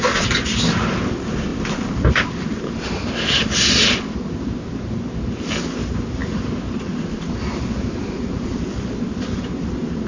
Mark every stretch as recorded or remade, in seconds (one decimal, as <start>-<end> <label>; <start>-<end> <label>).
0.0-6.2 recorded; 6.2-6.8 remade; 6.8-10.1 recorded